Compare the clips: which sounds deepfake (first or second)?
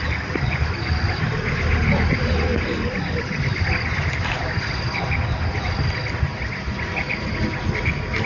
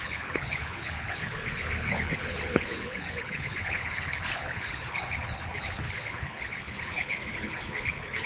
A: second